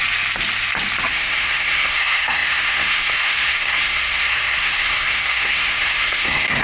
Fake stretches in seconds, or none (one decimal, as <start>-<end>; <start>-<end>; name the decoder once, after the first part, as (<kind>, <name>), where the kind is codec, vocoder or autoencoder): 1.1-6.6 (codec, SNAC)